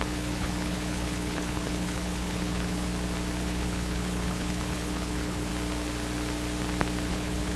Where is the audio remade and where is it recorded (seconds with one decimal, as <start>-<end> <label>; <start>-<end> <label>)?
0.0-2.9 remade; 2.9-3.4 recorded; 3.4-5.5 remade; 5.5-7.1 recorded; 7.1-7.6 remade